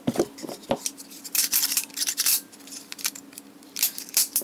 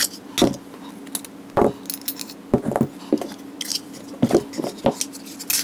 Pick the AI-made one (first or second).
first